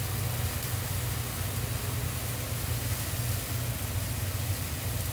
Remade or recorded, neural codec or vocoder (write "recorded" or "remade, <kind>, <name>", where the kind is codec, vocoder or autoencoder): recorded